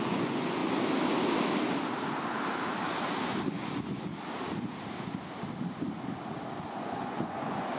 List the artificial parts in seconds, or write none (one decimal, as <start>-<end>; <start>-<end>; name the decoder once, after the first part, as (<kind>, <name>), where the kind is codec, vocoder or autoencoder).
0.0-0.6 (vocoder, Vocos); 3.5-4.1; 6.7-7.8